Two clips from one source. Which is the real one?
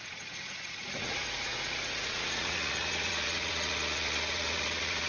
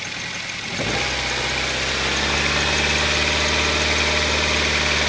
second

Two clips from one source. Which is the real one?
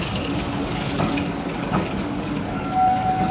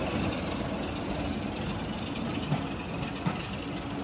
second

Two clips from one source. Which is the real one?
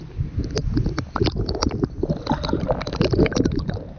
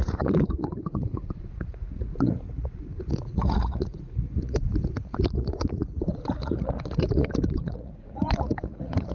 first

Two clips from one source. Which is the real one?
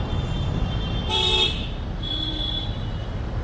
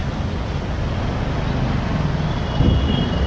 second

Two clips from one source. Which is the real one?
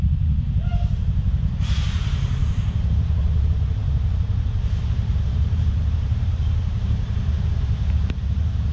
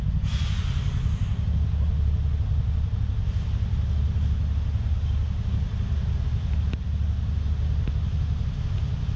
second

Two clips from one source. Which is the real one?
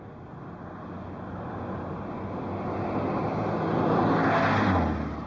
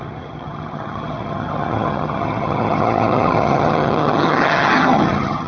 first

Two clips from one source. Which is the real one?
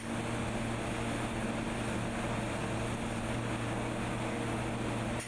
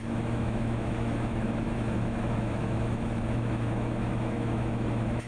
first